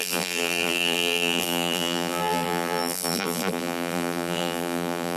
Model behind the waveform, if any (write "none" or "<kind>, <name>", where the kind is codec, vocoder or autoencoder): vocoder, BigVGAN v2